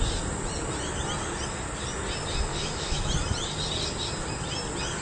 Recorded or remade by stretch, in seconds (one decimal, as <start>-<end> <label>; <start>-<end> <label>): 0.0-2.5 recorded; 2.5-3.1 remade; 3.1-5.0 recorded